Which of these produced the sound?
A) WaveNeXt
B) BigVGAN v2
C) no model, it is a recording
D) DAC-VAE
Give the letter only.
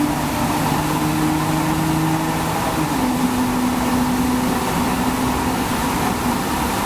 C